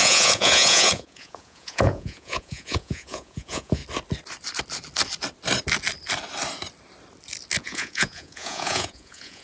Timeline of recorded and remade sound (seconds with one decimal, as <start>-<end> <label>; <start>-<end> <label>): 0.0-3.8 remade; 3.8-7.6 recorded; 7.6-9.4 remade